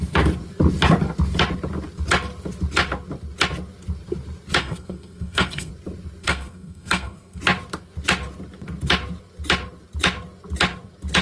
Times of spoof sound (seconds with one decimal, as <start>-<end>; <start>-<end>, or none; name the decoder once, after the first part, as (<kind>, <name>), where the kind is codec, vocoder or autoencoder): 4.6-5.7 (codec, SNAC); 6.2-7.4